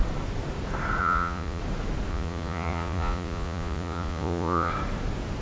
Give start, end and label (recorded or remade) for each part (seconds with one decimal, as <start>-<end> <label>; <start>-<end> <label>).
0.0-1.0 recorded; 1.0-1.6 remade; 1.6-2.1 recorded; 2.1-4.7 remade; 4.7-5.4 recorded